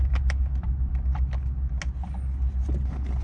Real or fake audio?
real